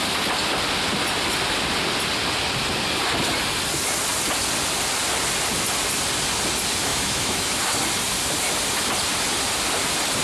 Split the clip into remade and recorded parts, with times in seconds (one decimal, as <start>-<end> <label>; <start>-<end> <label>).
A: 0.0-6.9 recorded; 6.9-7.6 remade; 7.6-10.2 recorded